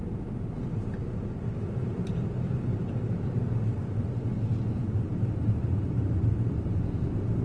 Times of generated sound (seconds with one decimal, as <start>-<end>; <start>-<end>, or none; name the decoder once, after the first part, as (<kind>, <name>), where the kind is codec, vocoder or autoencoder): 4.5-6.7 (vocoder, BigVGAN v2)